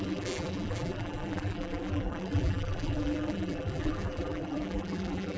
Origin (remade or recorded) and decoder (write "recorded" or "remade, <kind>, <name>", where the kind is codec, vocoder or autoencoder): remade, vocoder, BigVGAN v2